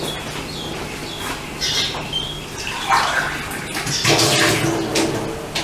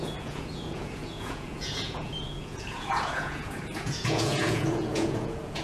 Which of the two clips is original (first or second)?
first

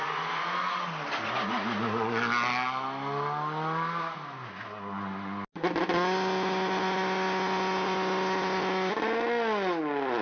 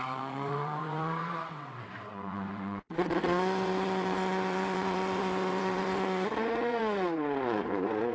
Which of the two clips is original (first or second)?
first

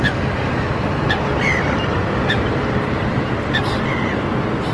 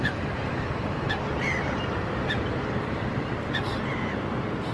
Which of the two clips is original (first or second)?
first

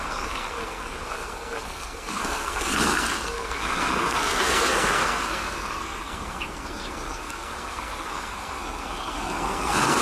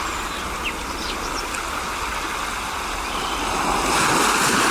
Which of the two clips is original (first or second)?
second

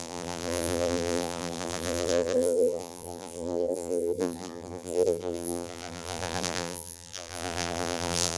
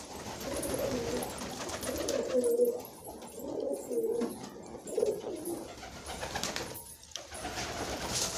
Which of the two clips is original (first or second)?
second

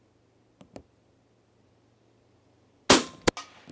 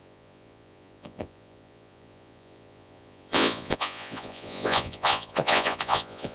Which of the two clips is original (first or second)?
first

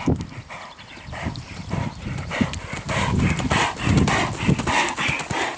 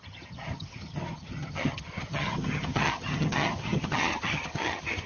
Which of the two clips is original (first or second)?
first